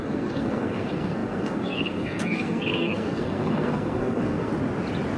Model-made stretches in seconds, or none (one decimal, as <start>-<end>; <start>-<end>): 0.0-4.5